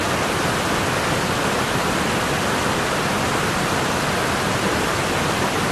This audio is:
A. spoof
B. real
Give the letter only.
B